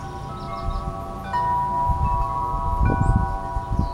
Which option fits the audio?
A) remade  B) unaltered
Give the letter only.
B